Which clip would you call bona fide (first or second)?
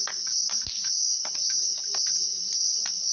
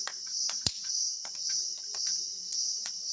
first